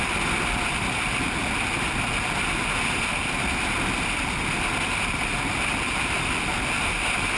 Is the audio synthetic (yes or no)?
yes